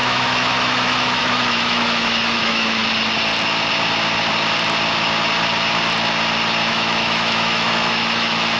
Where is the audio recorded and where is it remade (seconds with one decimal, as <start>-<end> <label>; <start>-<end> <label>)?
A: 0.0-2.8 remade; 2.8-6.7 recorded; 6.7-8.6 remade